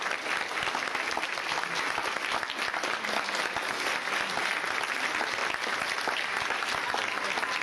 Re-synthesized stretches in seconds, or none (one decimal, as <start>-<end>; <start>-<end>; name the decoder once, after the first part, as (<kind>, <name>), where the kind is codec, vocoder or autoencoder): none